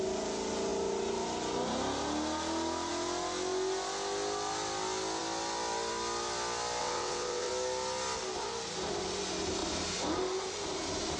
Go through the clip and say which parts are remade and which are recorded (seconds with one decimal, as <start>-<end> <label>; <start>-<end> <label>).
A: 0.0-6.8 recorded; 6.8-7.5 remade; 7.5-11.2 recorded